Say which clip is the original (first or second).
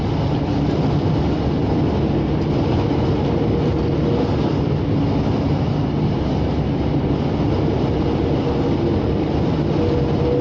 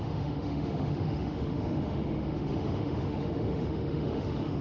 first